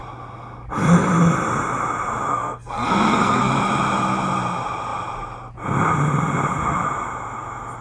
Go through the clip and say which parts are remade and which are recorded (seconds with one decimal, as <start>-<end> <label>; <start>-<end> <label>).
0.0-2.3 recorded; 2.3-3.5 remade; 3.5-7.8 recorded

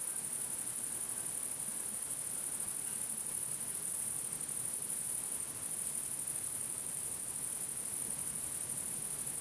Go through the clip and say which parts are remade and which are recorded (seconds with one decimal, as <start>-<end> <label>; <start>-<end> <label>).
0.0-6.6 recorded; 6.6-7.3 remade; 7.3-9.4 recorded